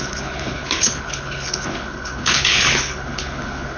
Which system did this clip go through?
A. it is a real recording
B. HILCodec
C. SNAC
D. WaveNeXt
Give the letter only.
B